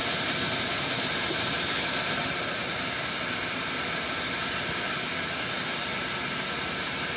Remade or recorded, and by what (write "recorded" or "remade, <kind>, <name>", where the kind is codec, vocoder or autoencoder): recorded